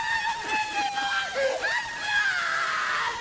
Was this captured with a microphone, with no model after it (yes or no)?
yes